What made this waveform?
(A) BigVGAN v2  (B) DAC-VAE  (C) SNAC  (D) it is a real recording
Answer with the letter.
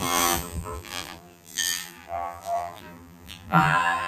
A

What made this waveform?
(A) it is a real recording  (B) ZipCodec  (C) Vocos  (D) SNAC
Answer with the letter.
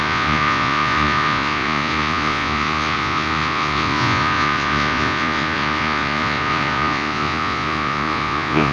C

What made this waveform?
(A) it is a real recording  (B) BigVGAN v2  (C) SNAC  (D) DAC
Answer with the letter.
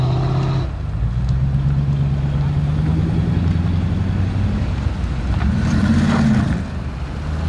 A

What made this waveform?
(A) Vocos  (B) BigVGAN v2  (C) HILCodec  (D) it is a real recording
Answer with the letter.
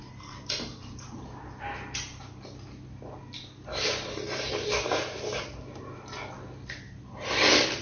D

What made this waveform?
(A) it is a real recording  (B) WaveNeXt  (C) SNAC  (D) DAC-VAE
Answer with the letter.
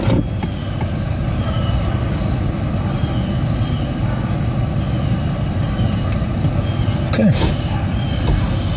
A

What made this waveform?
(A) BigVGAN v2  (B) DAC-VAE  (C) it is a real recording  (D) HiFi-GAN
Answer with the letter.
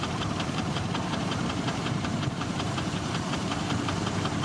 A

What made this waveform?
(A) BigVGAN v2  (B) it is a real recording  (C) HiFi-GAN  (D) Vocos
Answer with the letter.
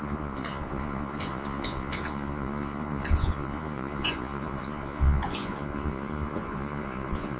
D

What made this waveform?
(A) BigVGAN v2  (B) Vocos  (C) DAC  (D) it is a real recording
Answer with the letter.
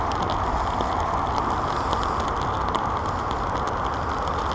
D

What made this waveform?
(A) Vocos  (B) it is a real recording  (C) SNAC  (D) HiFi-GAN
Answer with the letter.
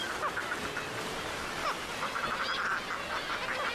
B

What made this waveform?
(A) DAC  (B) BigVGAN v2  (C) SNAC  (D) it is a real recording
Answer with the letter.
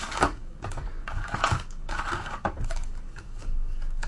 A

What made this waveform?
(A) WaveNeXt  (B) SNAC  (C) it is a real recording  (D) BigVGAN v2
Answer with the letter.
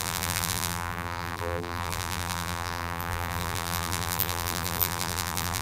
D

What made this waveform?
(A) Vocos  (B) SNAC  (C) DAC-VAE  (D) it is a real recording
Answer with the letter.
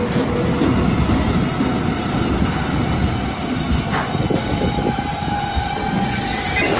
D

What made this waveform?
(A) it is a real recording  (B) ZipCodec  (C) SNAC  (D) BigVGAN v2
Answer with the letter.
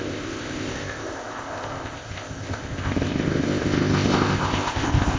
B